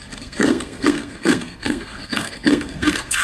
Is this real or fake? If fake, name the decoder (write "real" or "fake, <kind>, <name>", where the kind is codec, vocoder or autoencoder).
fake, codec, SNAC